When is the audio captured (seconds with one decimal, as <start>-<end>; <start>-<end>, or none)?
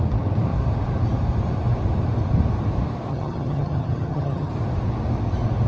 0.0-3.1; 4.5-5.7